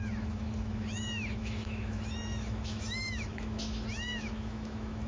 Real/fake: fake